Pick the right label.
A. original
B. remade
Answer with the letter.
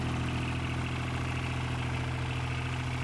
A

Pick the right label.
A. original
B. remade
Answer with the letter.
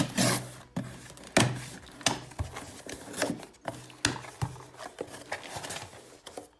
A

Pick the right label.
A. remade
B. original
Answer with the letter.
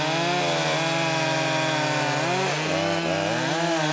B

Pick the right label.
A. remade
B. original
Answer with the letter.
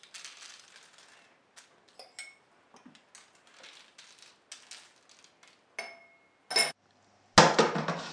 B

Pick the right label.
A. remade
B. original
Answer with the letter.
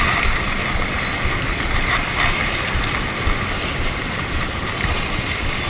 B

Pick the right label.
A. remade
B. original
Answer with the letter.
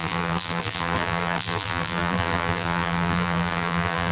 A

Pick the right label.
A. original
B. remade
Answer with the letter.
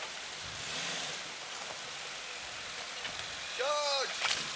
A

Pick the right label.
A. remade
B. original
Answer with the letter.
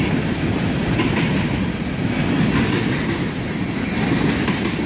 B